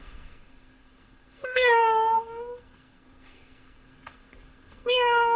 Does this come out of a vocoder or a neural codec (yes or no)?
yes